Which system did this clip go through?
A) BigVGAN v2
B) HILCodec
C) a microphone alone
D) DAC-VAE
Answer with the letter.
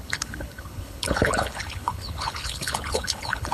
B